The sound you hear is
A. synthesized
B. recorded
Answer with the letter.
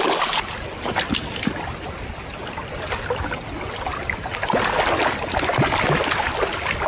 B